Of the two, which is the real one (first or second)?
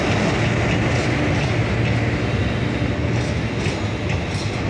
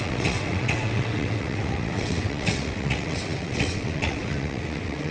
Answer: first